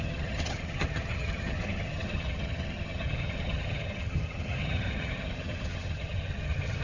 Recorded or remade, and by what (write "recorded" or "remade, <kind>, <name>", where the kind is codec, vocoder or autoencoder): remade, vocoder, HiFi-GAN